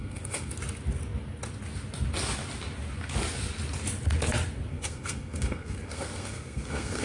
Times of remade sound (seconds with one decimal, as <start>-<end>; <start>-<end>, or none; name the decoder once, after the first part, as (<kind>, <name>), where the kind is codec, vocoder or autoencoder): 0.0-0.5 (codec, SNAC); 4.7-7.0